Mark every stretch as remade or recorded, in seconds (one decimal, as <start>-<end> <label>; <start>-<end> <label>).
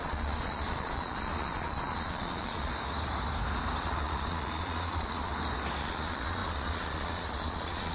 0.0-2.7 remade; 2.7-3.8 recorded; 3.8-5.3 remade; 5.3-5.8 recorded; 5.8-7.9 remade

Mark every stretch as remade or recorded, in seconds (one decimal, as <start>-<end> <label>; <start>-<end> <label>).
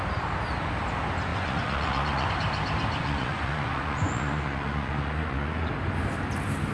0.0-1.3 recorded; 1.3-2.3 remade; 2.3-3.0 recorded; 3.0-5.7 remade; 5.7-6.7 recorded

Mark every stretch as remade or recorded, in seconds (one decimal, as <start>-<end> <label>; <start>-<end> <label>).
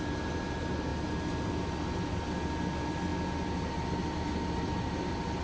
0.0-5.4 recorded